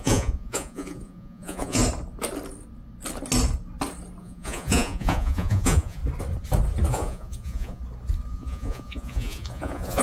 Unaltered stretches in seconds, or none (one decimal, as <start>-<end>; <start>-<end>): 1.8-4.2; 6.0-6.9; 7.8-8.3